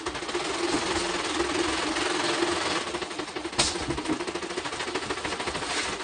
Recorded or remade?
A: recorded